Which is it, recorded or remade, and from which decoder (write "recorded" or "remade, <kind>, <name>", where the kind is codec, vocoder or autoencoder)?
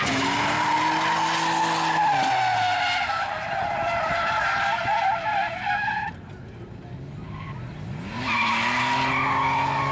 recorded